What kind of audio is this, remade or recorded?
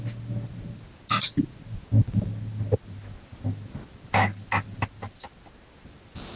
recorded